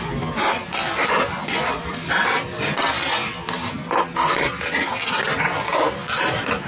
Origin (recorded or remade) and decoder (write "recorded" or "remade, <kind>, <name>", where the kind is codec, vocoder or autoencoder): recorded